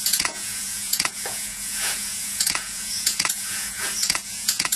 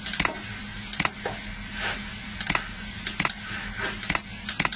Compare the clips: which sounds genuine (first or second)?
second